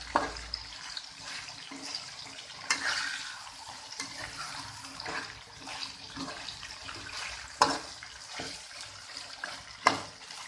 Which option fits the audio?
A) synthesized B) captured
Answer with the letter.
A